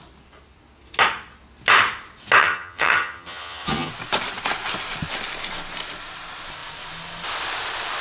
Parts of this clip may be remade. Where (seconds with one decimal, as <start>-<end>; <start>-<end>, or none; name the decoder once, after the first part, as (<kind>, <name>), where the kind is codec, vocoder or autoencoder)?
2.4-3.9 (vocoder, HiFi-GAN)